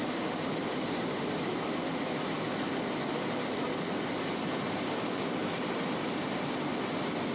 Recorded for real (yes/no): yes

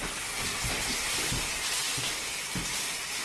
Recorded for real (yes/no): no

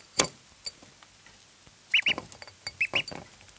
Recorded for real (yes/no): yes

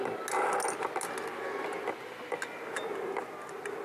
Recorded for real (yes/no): yes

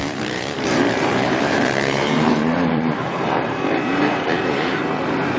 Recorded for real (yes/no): no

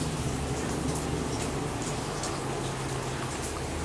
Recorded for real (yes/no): yes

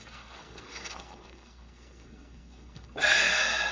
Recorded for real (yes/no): no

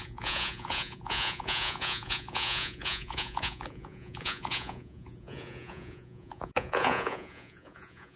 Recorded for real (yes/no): no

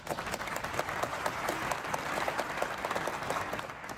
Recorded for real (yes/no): yes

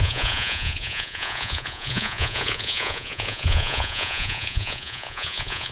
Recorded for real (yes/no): no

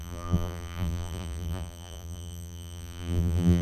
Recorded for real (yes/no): no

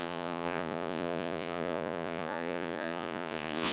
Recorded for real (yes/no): no